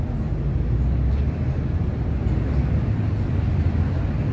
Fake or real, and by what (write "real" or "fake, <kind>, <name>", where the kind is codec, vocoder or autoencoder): real